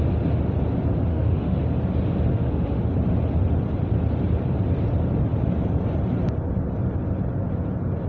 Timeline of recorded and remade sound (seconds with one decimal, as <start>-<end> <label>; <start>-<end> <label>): 0.0-1.1 recorded; 1.1-1.6 remade; 1.6-2.3 recorded; 2.3-2.8 remade; 2.8-8.1 recorded

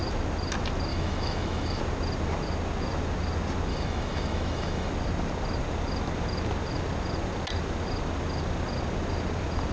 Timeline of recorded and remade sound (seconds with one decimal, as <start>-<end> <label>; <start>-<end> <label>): 0.0-0.9 recorded; 0.9-1.8 remade; 1.8-3.7 recorded; 3.7-4.9 remade; 4.9-9.7 recorded

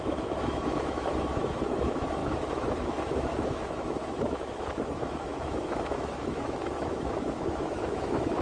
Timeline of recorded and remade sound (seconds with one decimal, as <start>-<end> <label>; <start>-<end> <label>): 0.0-8.4 remade

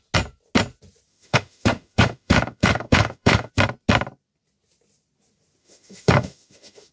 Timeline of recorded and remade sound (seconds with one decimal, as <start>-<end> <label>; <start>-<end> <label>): 0.0-1.1 recorded; 1.1-3.5 remade; 3.5-5.6 recorded; 5.6-6.9 remade

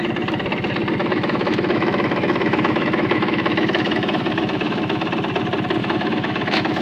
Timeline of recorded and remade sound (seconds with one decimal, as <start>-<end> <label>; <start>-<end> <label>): 0.0-1.0 recorded; 1.0-5.1 remade; 5.1-5.8 recorded; 5.8-6.8 remade

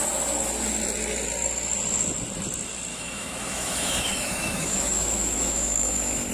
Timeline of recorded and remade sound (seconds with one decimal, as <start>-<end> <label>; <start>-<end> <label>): 0.0-2.9 recorded; 2.9-6.3 remade